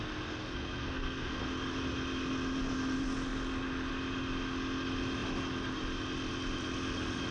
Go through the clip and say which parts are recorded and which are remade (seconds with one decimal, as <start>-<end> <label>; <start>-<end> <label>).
0.0-0.4 recorded; 0.4-1.4 remade; 1.4-7.3 recorded

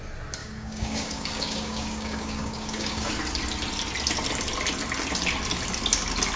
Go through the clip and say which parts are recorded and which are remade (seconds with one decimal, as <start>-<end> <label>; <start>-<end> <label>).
0.0-0.4 recorded; 0.4-3.1 remade; 3.1-6.4 recorded

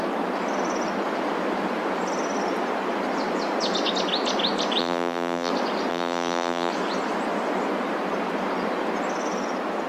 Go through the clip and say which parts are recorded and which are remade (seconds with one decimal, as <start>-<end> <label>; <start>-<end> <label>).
0.0-4.8 recorded; 4.8-5.5 remade; 5.5-5.9 recorded; 5.9-6.7 remade; 6.7-9.9 recorded

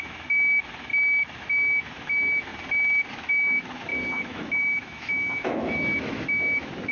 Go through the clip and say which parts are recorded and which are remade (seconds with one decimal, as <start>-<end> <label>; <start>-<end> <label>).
0.0-0.9 remade; 0.9-1.4 recorded; 1.4-2.5 remade; 2.5-3.1 recorded; 3.1-6.9 remade

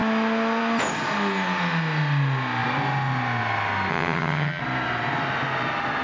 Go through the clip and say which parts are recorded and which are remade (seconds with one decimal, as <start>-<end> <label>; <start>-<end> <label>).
0.0-3.9 recorded; 3.9-4.6 remade; 4.6-6.0 recorded

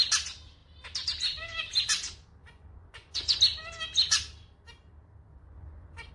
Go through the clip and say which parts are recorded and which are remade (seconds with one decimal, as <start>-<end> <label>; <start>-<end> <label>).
0.0-2.4 recorded; 2.4-3.4 remade; 3.4-5.3 recorded; 5.3-6.1 remade